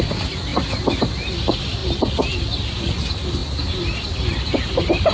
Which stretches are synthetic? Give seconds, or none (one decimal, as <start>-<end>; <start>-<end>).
0.5-1.0